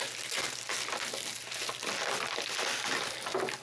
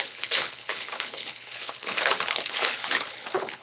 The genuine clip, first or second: first